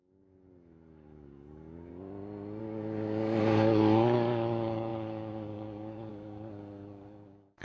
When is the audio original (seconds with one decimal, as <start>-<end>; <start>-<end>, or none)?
1.9-2.6